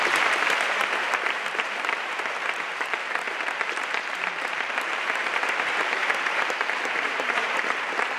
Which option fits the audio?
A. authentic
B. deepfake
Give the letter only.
B